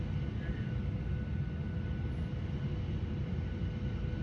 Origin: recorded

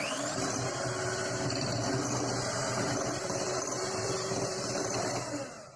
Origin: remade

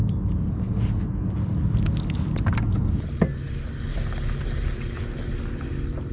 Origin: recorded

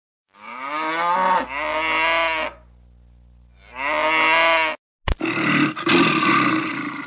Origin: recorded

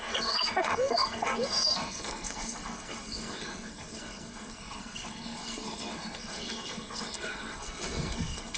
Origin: remade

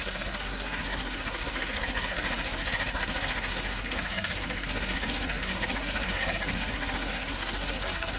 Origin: remade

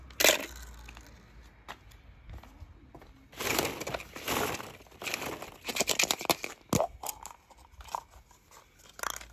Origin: recorded